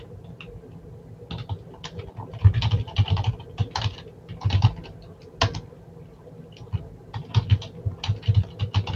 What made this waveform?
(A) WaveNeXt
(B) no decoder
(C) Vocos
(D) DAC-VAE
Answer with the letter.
B